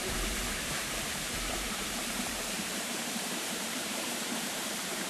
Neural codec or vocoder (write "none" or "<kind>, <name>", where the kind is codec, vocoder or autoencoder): vocoder, BigVGAN v2